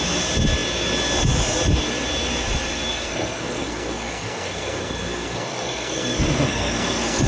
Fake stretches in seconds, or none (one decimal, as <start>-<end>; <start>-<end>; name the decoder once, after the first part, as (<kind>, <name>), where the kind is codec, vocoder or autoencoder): 2.9-7.3 (codec, SNAC)